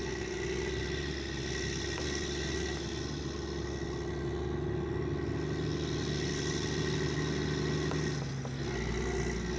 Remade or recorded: recorded